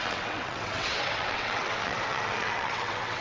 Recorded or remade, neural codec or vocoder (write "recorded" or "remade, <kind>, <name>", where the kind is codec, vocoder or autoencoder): remade, vocoder, WaveNeXt